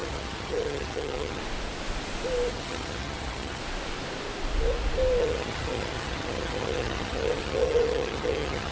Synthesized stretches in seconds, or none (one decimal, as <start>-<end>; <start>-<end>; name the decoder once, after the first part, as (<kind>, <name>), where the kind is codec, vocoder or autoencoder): 0.0-1.4 (vocoder, HiFi-GAN); 2.5-3.6; 5.2-8.7